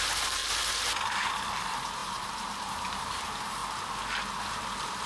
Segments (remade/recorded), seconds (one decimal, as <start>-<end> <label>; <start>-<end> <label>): 0.0-0.4 remade; 0.4-1.1 recorded; 1.1-3.6 remade; 3.6-4.5 recorded; 4.5-5.1 remade